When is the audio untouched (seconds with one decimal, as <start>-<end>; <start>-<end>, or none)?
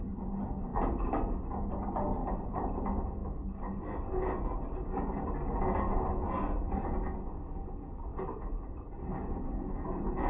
0.0-2.2; 2.8-8.1; 9.0-10.3